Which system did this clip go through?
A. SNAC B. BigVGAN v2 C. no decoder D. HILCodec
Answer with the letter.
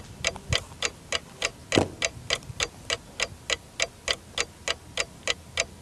C